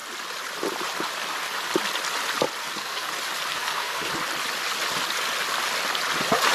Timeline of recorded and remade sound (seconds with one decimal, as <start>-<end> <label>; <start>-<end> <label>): 0.0-2.6 recorded; 2.6-3.1 remade; 3.1-3.5 recorded; 3.5-4.1 remade; 4.1-6.5 recorded